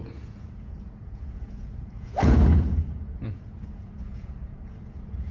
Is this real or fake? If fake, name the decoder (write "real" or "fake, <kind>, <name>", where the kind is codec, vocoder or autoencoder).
fake, vocoder, Vocos